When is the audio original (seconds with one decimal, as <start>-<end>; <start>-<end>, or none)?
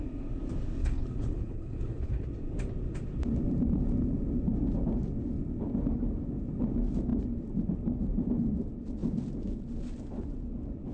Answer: 0.0-0.8; 2.3-10.9